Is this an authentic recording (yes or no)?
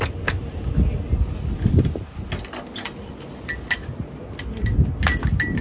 yes